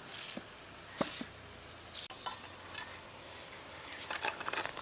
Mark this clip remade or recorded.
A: recorded